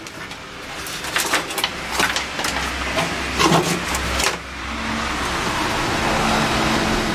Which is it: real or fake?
real